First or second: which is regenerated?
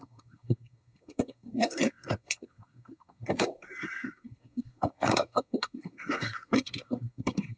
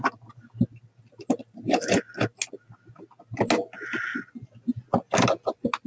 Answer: first